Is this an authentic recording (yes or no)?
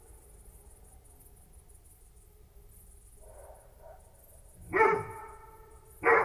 yes